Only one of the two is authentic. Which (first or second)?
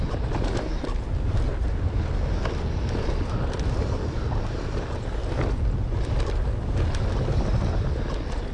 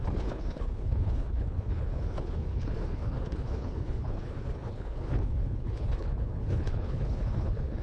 first